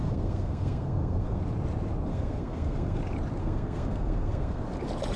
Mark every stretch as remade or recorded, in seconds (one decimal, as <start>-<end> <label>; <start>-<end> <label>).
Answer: 0.0-1.4 remade; 1.4-2.1 recorded; 2.1-3.0 remade; 3.0-3.4 recorded; 3.4-4.6 remade; 4.6-5.2 recorded